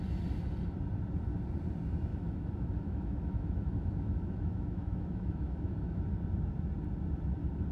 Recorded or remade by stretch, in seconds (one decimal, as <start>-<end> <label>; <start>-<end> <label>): 0.0-2.1 recorded; 2.1-6.0 remade; 6.0-7.7 recorded